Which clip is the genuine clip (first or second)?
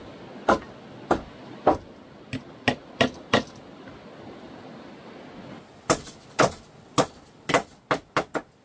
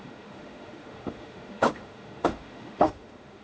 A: first